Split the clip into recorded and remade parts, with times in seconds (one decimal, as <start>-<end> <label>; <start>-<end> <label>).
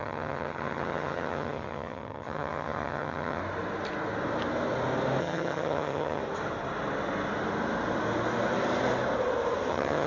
0.0-3.4 remade; 3.4-5.2 recorded; 5.2-6.2 remade; 6.2-9.7 recorded; 9.7-10.1 remade